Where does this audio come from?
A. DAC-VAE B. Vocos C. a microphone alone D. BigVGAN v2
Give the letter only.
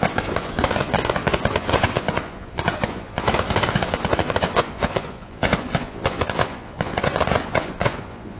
B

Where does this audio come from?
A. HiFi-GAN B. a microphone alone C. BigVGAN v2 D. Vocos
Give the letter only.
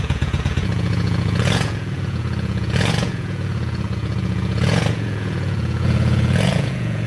D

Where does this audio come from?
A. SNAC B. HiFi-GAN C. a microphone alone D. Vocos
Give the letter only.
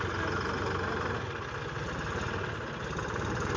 C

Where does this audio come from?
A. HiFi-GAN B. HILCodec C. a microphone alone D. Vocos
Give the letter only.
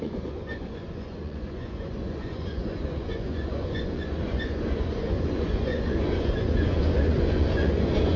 D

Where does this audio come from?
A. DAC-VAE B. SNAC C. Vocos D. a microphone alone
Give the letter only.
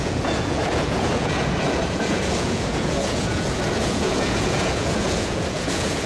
C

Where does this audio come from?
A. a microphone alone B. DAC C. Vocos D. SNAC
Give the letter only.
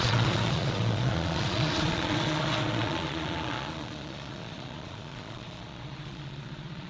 C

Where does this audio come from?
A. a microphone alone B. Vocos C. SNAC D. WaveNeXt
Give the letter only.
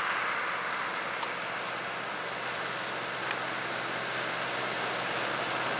A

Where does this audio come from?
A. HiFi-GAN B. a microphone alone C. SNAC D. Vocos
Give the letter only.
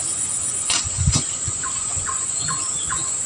D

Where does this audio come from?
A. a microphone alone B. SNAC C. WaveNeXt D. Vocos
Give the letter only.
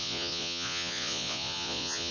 D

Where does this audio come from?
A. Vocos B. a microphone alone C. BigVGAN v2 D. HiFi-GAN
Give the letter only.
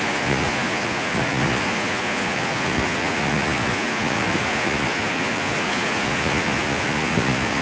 A